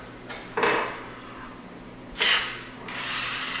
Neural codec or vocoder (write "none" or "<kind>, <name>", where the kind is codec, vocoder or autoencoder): none